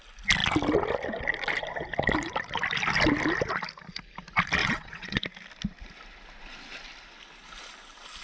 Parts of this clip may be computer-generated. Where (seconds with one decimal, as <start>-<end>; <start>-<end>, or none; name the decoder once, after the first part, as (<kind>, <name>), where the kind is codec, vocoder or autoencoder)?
4.6-5.2 (vocoder, WaveNeXt)

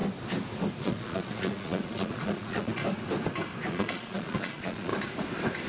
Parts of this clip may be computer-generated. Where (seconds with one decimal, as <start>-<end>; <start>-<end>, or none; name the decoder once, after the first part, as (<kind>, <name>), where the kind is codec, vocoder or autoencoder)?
0.8-2.8 (vocoder, Vocos); 3.7-4.9